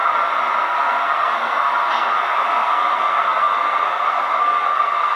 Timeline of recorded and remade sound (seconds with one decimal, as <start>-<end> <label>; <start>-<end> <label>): 0.0-0.6 recorded; 0.6-5.2 remade